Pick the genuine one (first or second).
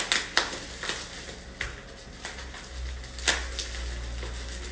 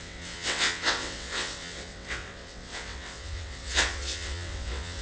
first